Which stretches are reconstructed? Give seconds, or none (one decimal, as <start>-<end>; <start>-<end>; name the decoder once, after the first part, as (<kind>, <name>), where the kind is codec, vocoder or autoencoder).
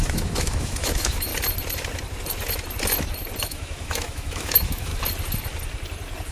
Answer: 0.0-1.3 (autoencoder, DAC-VAE); 3.4-4.9